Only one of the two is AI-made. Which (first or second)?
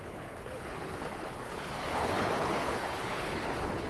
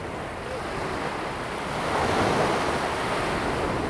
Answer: first